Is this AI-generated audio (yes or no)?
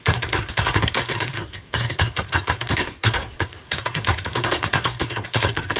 yes